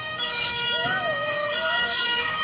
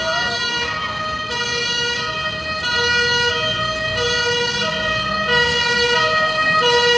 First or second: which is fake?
first